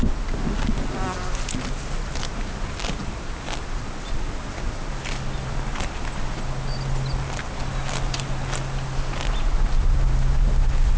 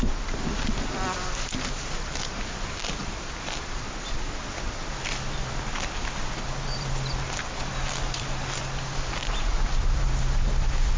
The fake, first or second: second